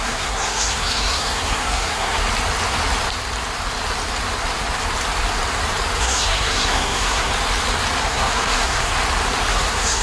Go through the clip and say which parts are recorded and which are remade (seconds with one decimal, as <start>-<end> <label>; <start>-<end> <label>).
0.0-2.2 remade; 2.2-6.0 recorded; 6.0-7.3 remade; 7.3-8.0 recorded; 8.0-8.9 remade; 8.9-9.5 recorded; 9.5-10.0 remade